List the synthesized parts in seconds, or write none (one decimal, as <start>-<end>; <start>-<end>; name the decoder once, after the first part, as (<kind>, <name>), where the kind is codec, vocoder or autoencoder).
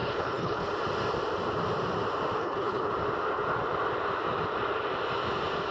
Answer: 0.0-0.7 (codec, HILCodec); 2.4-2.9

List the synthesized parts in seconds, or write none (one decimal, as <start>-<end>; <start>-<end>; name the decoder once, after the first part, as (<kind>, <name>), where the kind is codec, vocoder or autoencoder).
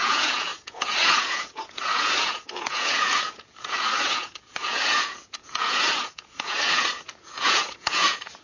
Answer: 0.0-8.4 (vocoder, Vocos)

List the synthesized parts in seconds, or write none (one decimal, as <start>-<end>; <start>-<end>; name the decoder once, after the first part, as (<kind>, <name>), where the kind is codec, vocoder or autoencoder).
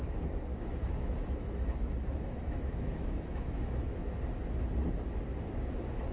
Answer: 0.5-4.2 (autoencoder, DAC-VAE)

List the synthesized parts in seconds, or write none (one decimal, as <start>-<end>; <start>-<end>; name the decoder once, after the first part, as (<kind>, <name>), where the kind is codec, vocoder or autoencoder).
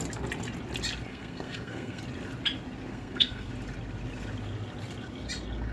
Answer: 1.1-2.0 (codec, SNAC); 2.9-3.5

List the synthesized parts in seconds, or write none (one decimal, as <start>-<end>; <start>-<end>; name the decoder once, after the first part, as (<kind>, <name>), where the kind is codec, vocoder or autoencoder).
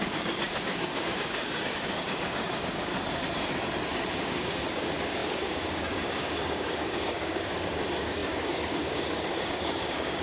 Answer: 0.0-2.9 (codec, DAC); 4.1-10.2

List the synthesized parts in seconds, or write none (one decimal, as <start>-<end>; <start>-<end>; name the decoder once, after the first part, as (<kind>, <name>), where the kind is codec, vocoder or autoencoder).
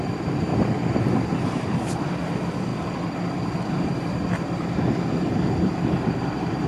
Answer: 0.0-0.5 (vocoder, BigVGAN v2); 1.1-2.7; 6.1-6.7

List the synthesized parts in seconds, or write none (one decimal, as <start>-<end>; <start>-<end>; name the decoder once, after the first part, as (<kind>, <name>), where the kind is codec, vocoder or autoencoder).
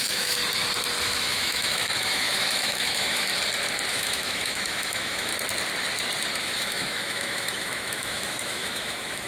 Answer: 0.0-0.4 (autoencoder, DAC-VAE); 1.0-3.3; 3.9-5.3; 6.4-9.3